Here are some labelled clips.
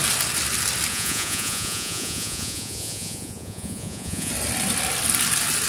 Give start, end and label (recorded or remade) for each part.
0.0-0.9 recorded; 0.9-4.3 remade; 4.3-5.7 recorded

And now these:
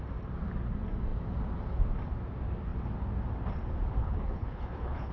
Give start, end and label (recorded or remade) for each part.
0.0-4.0 recorded; 4.0-5.1 remade

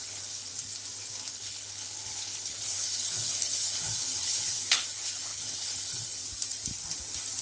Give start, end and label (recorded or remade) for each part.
0.0-0.5 remade; 0.5-1.3 recorded; 1.3-6.2 remade; 6.2-7.4 recorded

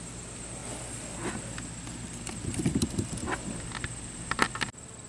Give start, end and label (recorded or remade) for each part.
0.0-5.1 recorded

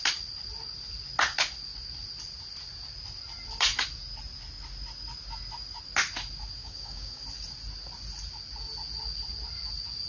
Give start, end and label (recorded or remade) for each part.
0.0-6.6 recorded; 6.6-7.2 remade; 7.2-10.1 recorded